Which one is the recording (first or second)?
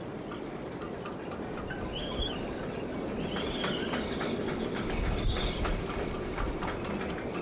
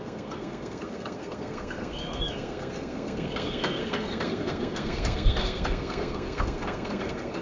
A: first